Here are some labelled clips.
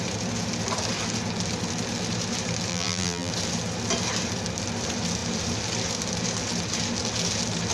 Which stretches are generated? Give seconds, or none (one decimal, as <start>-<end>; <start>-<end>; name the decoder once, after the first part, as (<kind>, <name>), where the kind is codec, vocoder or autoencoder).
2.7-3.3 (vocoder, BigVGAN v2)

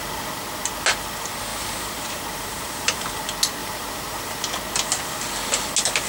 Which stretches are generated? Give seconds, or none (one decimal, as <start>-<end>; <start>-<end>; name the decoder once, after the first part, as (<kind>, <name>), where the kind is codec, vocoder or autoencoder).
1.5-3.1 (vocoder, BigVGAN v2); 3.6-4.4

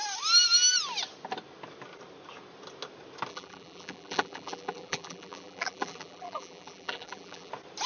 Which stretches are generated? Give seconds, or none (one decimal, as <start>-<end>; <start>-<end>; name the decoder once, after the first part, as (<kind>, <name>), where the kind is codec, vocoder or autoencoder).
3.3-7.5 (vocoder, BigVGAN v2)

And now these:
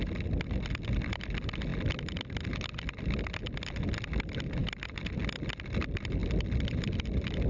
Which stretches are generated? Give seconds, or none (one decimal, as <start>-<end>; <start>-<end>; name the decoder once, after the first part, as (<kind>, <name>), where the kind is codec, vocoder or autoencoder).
6.2-6.8 (vocoder, BigVGAN v2)

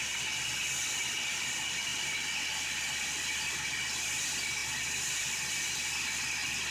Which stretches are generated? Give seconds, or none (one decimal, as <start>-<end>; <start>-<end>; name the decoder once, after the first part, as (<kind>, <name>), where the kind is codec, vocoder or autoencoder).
0.0-1.9 (vocoder, BigVGAN v2); 4.0-6.7

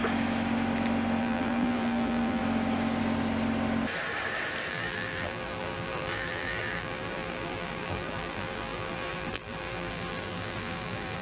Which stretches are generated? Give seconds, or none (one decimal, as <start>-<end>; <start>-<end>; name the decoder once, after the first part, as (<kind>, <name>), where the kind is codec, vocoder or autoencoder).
1.2-2.4 (vocoder, BigVGAN v2); 4.7-11.2

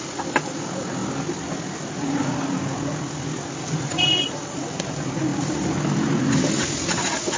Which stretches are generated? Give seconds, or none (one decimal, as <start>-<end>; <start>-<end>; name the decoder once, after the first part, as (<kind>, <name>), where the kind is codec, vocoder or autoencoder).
none